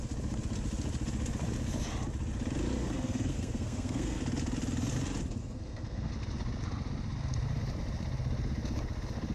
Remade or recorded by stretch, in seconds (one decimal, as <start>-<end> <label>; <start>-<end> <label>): 0.0-2.8 recorded; 2.8-4.2 remade; 4.2-5.4 recorded; 5.4-6.1 remade; 6.1-9.3 recorded